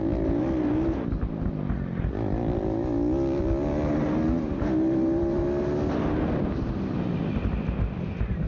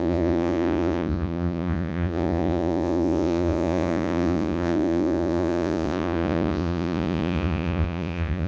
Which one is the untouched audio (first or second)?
first